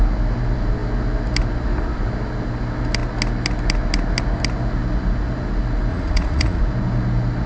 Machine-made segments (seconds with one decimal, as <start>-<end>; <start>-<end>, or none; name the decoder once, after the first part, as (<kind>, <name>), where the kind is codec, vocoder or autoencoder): 5.9-6.6 (vocoder, Vocos)